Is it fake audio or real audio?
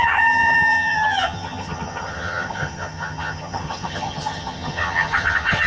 fake